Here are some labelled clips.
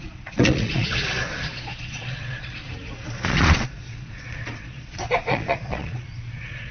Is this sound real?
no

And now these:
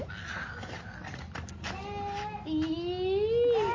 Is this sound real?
yes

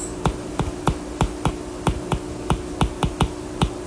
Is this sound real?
yes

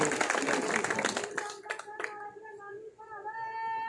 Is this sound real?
yes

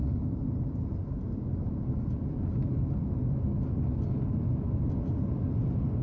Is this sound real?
yes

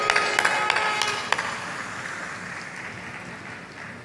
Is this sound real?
yes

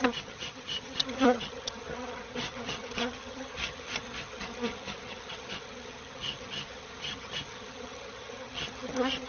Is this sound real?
no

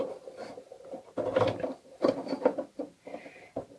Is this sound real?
yes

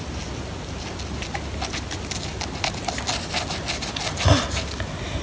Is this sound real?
yes